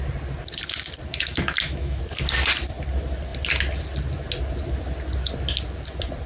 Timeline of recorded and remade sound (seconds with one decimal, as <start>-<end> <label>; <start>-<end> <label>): 0.0-1.1 recorded; 1.1-2.0 remade; 2.0-6.3 recorded